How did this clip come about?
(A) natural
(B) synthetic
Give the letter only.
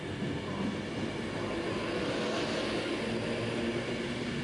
A